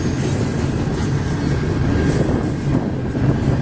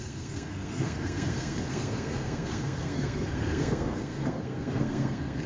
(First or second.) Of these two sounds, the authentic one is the first